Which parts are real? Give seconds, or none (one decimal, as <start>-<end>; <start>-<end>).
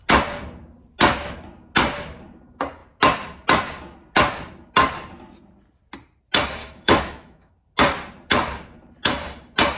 0.0-6.6; 7.5-9.8